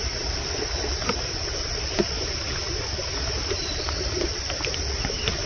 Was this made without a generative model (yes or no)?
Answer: no